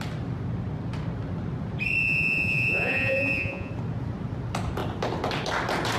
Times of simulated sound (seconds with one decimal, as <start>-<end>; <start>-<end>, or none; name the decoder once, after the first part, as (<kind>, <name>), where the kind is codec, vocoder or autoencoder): 2.0-3.7 (vocoder, Vocos)